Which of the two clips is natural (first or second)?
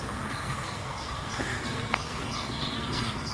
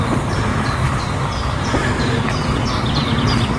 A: second